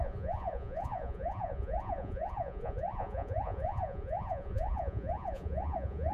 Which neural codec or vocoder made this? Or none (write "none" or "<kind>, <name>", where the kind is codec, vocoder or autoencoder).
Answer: vocoder, Vocos